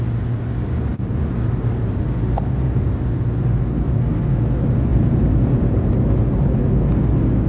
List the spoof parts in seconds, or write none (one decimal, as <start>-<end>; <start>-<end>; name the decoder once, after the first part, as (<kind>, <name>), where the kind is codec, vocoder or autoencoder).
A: 4.9-6.2 (vocoder, BigVGAN v2)